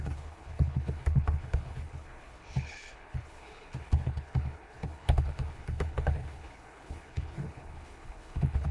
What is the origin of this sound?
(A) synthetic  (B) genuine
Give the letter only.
A